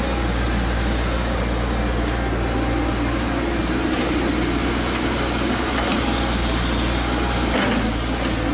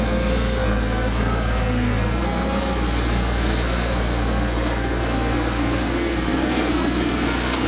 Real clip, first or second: first